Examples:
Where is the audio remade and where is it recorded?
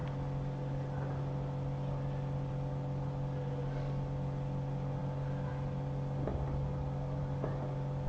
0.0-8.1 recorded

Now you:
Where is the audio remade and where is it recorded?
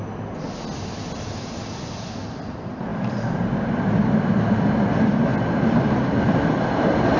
0.0-7.2 recorded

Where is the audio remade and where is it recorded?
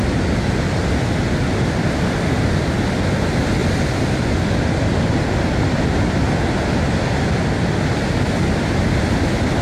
0.0-9.6 recorded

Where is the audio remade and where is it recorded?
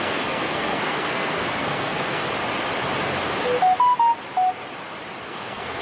0.0-2.2 remade; 2.2-5.2 recorded; 5.2-5.8 remade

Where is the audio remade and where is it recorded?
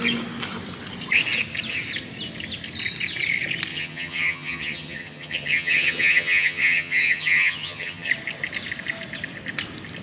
0.0-3.7 recorded; 3.7-8.1 remade; 8.1-10.0 recorded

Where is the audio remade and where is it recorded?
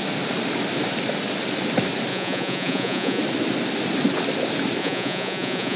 0.0-2.1 recorded; 2.1-3.2 remade; 3.2-4.8 recorded; 4.8-5.8 remade